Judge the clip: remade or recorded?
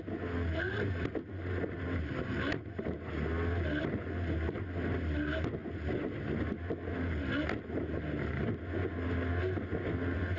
recorded